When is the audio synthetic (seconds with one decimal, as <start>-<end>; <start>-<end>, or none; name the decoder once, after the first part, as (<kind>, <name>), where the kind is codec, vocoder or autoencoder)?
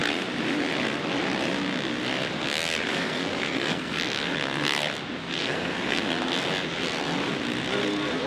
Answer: 2.9-4.0 (codec, SNAC); 5.2-6.0